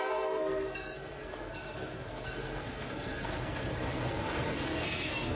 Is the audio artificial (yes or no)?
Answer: yes